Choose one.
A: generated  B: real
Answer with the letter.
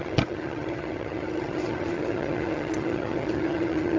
A